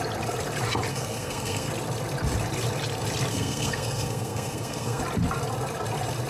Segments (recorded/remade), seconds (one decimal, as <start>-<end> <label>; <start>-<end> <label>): 0.0-0.9 recorded; 0.9-1.7 remade; 1.7-3.3 recorded; 3.3-5.0 remade; 5.0-6.3 recorded